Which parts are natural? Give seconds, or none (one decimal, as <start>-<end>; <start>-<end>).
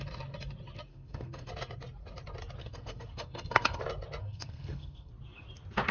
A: 0.0-0.9; 1.5-2.6; 3.8-4.2; 5.1-5.9